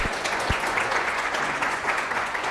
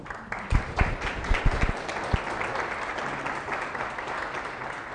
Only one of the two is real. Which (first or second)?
second